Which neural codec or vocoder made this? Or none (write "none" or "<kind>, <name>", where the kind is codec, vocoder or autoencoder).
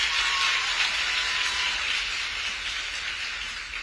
none